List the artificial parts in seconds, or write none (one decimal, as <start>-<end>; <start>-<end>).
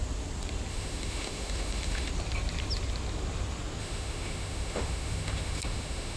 0.7-2.1; 3.8-6.2